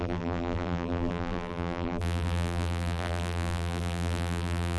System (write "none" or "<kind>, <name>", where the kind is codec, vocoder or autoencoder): vocoder, BigVGAN v2